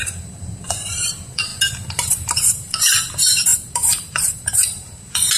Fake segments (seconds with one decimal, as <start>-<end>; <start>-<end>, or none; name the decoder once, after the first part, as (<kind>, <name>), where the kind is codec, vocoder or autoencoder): 0.0-1.5 (vocoder, BigVGAN v2); 2.3-5.4